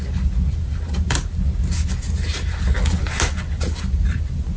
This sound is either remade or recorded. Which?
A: recorded